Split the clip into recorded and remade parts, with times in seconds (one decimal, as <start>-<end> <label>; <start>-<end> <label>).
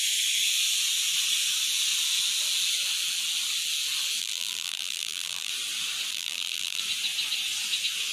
0.0-4.2 recorded; 4.2-5.5 remade; 5.5-6.1 recorded; 6.1-6.8 remade; 6.8-8.1 recorded